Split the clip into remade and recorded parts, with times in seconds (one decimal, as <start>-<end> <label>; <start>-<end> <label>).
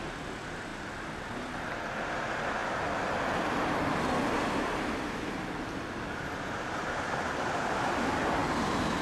0.0-9.0 recorded